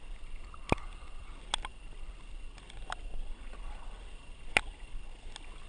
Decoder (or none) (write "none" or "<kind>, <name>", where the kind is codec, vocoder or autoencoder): none